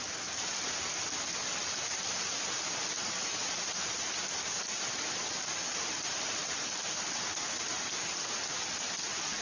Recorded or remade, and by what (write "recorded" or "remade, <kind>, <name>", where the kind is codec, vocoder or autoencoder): recorded